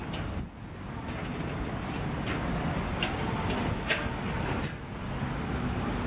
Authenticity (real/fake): real